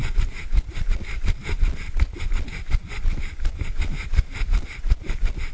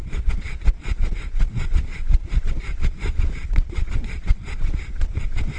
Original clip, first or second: first